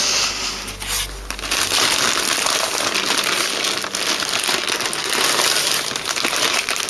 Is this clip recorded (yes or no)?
yes